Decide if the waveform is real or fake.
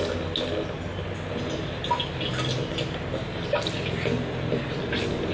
real